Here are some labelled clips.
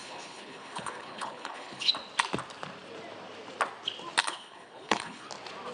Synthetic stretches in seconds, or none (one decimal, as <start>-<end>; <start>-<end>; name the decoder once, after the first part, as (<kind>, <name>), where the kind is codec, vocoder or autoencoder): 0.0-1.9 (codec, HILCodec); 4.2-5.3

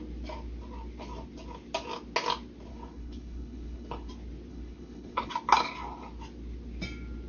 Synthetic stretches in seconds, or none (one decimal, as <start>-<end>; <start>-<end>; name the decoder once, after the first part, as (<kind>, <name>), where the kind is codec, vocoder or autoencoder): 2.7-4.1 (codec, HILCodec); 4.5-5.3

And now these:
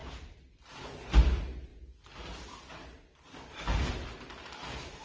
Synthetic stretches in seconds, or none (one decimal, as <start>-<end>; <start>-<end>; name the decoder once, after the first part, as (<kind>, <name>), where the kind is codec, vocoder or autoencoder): none